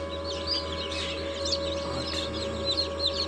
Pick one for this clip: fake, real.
real